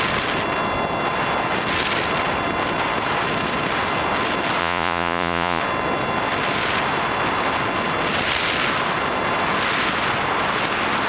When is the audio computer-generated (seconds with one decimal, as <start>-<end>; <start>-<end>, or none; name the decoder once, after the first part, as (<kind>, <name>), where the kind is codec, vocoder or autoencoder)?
4.6-5.6 (vocoder, Vocos)